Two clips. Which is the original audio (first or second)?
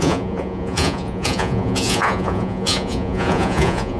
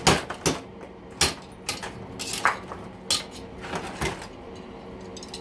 second